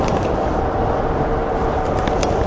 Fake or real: real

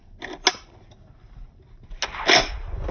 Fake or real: real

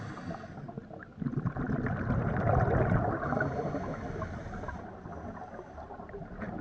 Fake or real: real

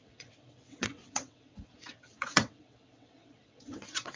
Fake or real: fake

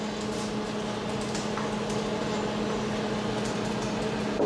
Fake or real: real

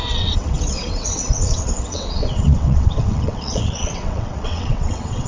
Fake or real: fake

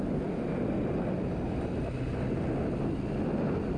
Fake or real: real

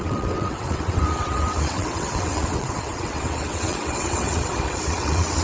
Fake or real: fake